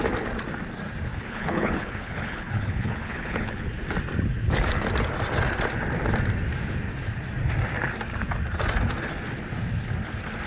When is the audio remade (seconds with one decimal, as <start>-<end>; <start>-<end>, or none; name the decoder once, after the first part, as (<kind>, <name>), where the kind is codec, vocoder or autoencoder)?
1.1-3.7 (codec, HILCodec)